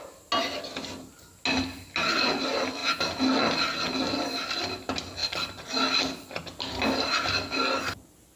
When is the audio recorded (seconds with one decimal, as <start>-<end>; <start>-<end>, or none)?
0.0-8.4